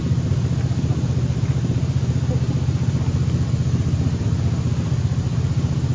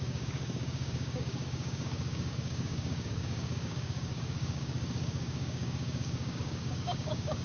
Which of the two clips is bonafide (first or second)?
first